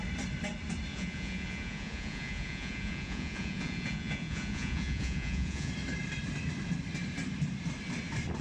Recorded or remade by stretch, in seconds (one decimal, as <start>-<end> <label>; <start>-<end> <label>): 0.0-0.9 recorded; 0.9-5.7 remade; 5.7-8.4 recorded